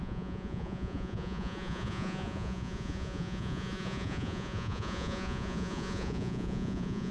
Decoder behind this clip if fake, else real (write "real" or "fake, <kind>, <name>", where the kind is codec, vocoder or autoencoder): fake, vocoder, Vocos